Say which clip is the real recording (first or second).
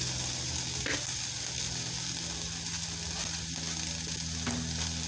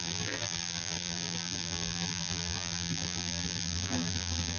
first